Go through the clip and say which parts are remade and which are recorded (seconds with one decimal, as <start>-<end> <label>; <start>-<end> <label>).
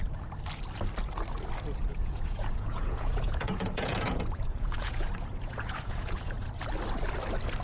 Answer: 0.0-1.9 recorded; 1.9-6.5 remade; 6.5-7.6 recorded